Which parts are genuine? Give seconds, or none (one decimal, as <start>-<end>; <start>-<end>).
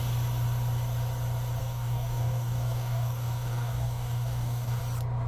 0.0-1.6; 4.8-5.3